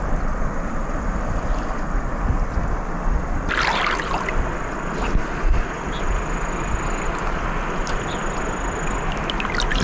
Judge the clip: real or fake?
real